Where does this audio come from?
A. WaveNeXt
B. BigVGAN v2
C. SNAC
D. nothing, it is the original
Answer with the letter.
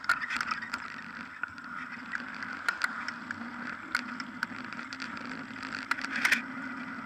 D